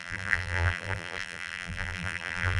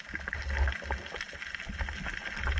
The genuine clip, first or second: second